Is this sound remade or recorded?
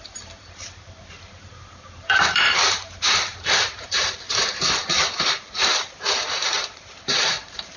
remade